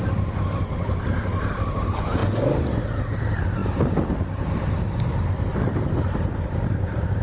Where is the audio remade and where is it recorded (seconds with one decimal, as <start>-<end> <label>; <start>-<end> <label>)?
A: 0.0-7.2 recorded